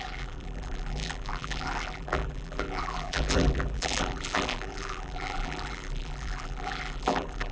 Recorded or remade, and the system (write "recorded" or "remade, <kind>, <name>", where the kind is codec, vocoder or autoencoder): remade, vocoder, BigVGAN v2